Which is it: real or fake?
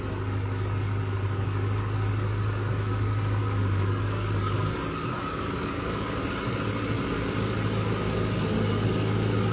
fake